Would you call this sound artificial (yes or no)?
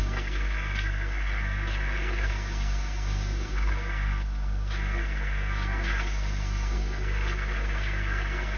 yes